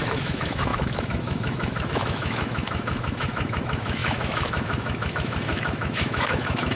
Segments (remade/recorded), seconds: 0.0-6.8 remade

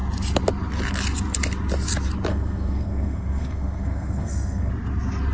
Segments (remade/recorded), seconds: 0.0-2.3 recorded; 2.3-4.7 remade; 4.7-5.3 recorded

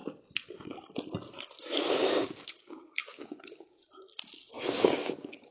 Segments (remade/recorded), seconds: 0.0-1.8 recorded; 1.8-3.8 remade; 3.8-4.5 recorded; 4.5-5.5 remade

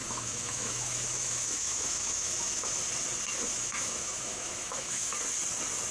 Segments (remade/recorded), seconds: 0.0-2.8 remade; 2.8-3.5 recorded; 3.5-5.1 remade; 5.1-5.9 recorded

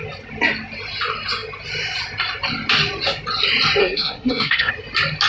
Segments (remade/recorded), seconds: 0.0-3.8 recorded; 3.8-4.7 remade; 4.7-5.3 recorded

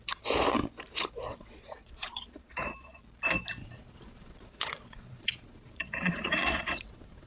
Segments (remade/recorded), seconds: 0.0-1.3 recorded; 1.3-3.0 remade; 3.0-3.6 recorded; 3.6-7.3 remade